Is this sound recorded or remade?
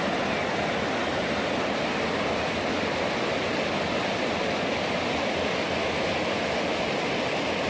recorded